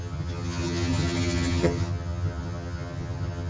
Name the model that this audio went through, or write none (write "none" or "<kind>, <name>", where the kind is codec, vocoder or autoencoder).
vocoder, HiFi-GAN